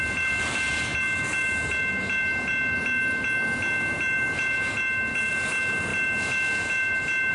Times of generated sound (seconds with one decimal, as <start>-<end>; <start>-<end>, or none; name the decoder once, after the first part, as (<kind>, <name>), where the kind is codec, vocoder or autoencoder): none